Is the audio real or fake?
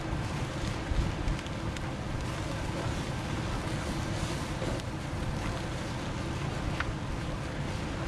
real